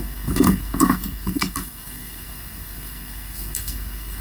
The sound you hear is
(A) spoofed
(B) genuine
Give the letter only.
A